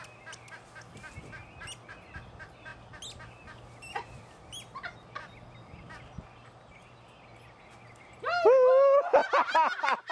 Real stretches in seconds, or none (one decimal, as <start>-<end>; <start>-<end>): 0.0-10.1